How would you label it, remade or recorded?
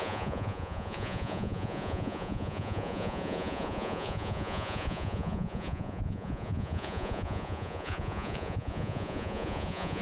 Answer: remade